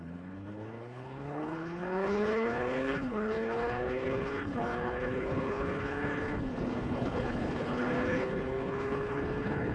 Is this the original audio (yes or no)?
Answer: no